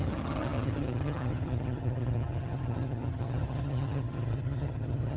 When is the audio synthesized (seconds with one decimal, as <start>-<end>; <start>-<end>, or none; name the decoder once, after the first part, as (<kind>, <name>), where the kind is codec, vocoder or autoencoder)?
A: 0.0-5.2 (vocoder, HiFi-GAN)